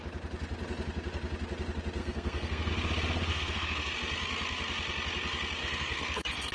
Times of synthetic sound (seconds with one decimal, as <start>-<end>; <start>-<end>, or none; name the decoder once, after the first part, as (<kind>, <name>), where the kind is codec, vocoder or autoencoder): 2.0-2.7 (codec, SNAC); 3.3-3.9; 5.6-6.5